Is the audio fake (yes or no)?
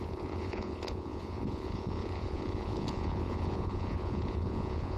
yes